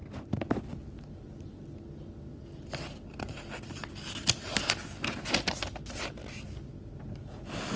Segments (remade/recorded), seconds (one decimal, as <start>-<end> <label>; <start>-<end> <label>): 0.0-7.8 recorded